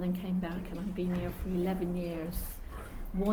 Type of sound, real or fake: real